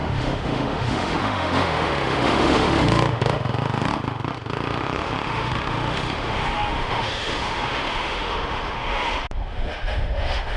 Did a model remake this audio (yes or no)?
yes